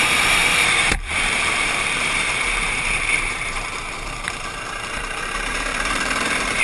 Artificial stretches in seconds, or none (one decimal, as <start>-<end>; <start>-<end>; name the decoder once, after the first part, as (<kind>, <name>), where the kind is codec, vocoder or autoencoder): 0.0-6.6 (vocoder, BigVGAN v2)